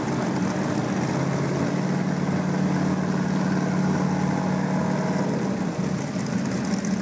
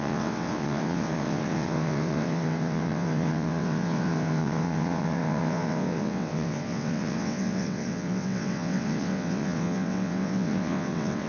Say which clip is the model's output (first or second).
second